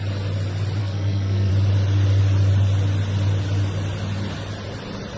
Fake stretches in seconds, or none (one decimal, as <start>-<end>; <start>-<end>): 0.8-1.5